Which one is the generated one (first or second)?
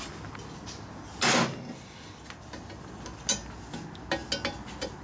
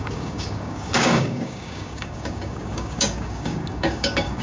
second